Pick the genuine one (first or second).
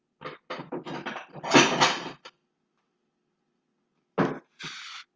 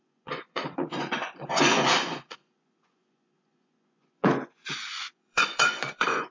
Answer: first